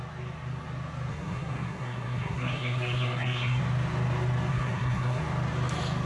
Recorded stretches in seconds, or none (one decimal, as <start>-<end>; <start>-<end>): 0.0-1.1; 3.6-4.5; 5.2-6.1